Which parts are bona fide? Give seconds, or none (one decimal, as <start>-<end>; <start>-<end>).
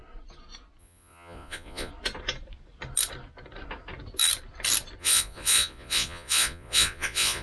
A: 0.0-0.8; 1.9-5.0